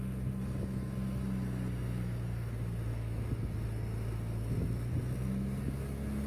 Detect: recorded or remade recorded